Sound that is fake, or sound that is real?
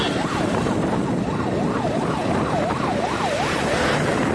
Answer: real